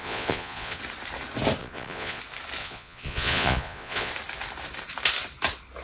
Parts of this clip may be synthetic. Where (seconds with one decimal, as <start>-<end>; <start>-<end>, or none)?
0.0-0.8; 1.6-2.2; 2.6-4.1

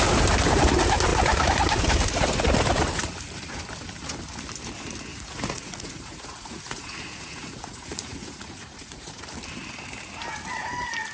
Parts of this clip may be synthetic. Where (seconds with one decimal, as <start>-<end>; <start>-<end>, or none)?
5.1-9.2

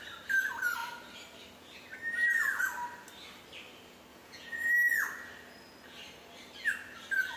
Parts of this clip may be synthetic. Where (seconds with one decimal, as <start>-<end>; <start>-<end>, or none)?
4.1-4.7